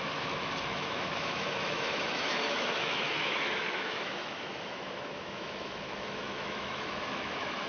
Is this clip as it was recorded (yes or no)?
no